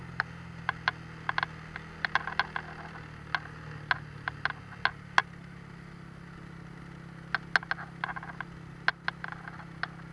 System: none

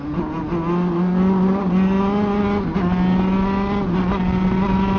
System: none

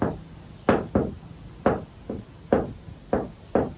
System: none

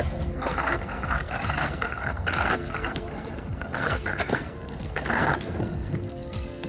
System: codec, SNAC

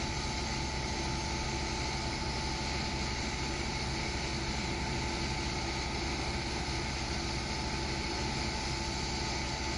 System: none